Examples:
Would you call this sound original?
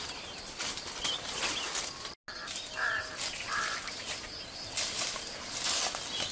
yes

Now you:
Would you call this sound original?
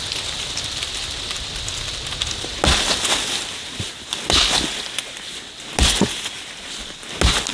yes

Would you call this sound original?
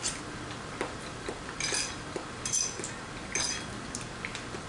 yes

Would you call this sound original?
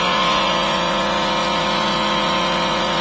no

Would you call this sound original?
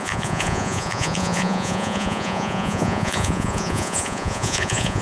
no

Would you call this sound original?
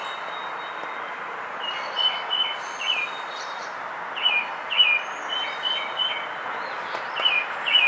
yes